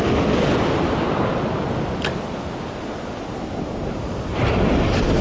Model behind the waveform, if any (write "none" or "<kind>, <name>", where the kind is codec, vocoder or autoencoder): none